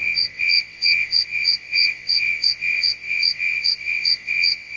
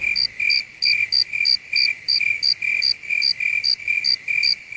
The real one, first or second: second